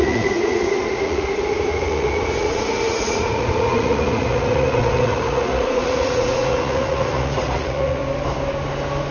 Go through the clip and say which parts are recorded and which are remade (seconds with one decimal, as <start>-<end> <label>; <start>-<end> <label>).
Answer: 0.0-8.0 remade; 8.0-9.1 recorded